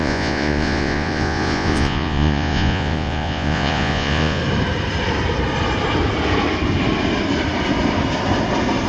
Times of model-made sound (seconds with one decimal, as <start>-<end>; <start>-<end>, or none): 0.0-4.4